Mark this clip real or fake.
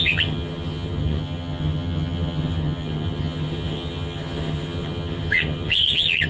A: fake